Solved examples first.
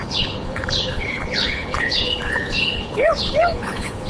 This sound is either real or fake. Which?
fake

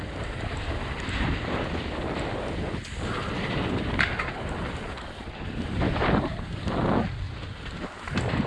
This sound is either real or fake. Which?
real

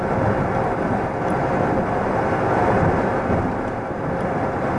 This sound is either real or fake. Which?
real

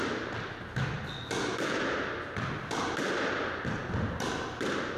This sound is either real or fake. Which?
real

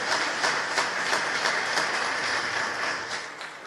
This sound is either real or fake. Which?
fake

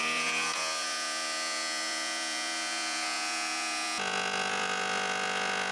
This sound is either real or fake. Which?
fake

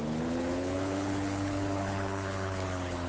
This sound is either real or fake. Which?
fake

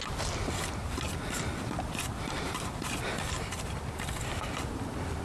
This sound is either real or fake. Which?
real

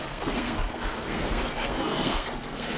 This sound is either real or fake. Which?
fake